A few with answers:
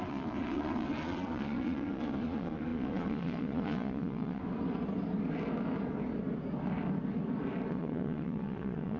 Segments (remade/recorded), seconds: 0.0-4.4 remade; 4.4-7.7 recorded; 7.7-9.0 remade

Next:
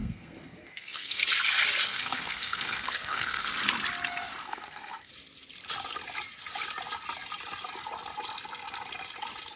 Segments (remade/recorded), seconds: 0.0-1.2 remade; 1.2-1.9 recorded; 1.9-3.5 remade; 3.5-4.4 recorded; 4.4-5.1 remade; 5.1-9.6 recorded

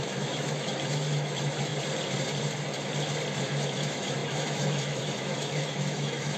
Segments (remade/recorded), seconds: 0.0-1.7 remade; 1.7-3.4 recorded; 3.4-6.4 remade